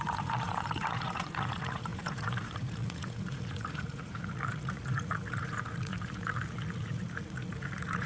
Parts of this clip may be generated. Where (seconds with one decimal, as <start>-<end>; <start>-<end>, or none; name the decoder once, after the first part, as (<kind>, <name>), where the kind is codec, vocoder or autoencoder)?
0.0-8.1 (vocoder, Vocos)